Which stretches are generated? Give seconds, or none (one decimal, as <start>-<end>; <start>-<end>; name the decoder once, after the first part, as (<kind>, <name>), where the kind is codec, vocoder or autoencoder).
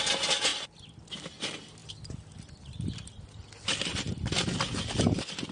none